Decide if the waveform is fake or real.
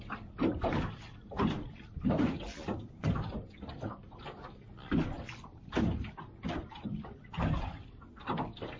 real